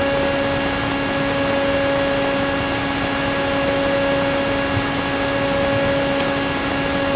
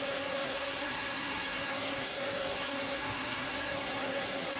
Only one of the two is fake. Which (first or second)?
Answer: second